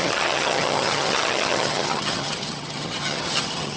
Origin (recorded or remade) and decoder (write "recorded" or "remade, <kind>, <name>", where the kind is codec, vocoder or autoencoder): remade, vocoder, HiFi-GAN